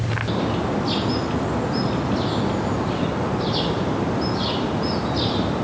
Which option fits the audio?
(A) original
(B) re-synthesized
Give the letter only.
A